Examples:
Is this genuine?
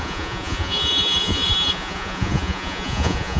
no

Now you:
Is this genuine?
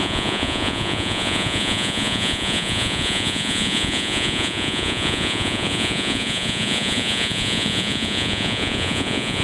no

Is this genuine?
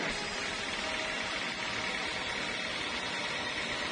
yes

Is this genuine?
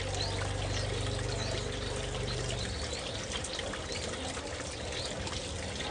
yes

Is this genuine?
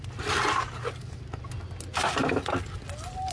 yes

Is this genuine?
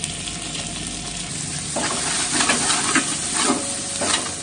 yes